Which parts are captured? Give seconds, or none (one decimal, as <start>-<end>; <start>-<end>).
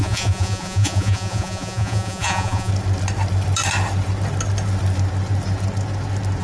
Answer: 2.7-6.4